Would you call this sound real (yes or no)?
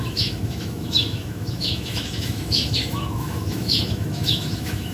no